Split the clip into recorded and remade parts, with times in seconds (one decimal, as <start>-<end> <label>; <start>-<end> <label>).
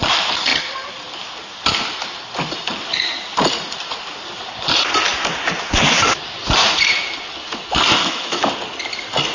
0.0-8.0 recorded; 8.0-8.5 remade; 8.5-9.3 recorded